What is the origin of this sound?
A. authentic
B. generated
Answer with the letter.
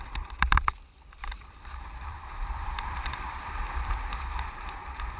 B